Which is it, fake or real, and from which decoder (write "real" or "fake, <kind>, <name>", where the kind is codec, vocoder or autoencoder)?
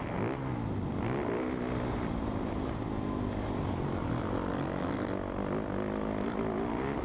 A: real